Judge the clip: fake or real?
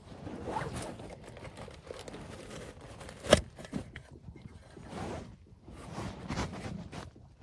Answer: real